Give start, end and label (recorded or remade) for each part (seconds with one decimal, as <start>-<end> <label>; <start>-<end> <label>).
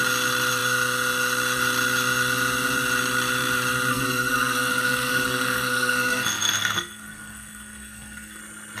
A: 0.0-3.9 recorded; 3.9-8.4 remade; 8.4-8.8 recorded